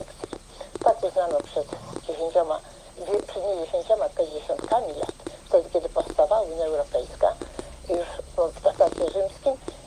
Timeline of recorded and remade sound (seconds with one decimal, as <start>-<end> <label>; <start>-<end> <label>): 0.0-0.5 remade; 0.5-9.9 recorded